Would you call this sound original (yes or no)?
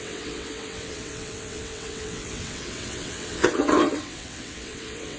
no